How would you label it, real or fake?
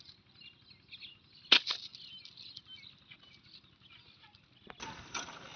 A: real